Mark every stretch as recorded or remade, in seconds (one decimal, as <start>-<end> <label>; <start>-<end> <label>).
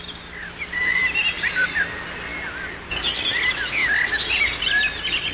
0.0-0.4 recorded; 0.4-1.8 remade; 1.8-5.3 recorded